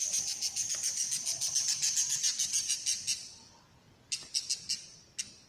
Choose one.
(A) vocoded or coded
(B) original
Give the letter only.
B